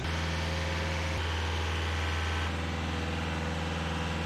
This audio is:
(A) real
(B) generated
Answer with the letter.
A